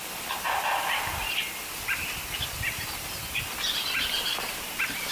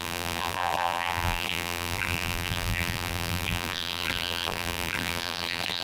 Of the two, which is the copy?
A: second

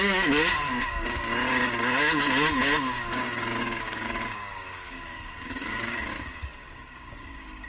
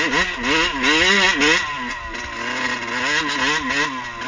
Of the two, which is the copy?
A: first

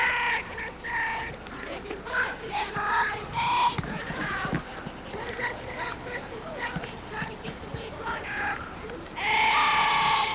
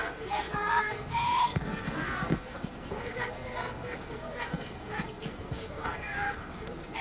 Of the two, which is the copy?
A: second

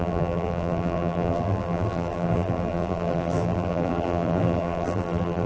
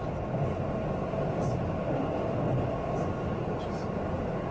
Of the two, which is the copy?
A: first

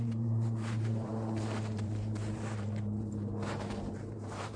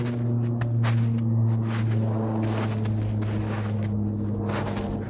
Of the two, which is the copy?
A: first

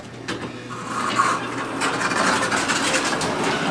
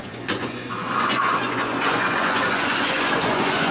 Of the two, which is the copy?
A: second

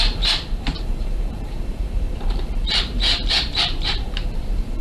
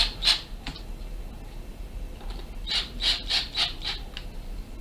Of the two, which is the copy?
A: first